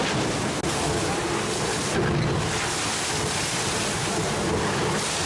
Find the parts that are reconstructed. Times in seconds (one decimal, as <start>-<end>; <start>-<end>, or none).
none